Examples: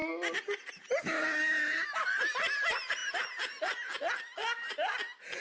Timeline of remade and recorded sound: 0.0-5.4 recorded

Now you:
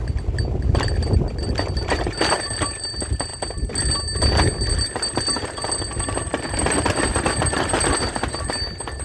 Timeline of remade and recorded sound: 0.0-9.0 recorded

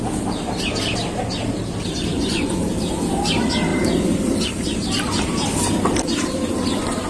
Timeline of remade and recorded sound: 0.0-2.1 recorded; 2.1-2.7 remade; 2.7-7.1 recorded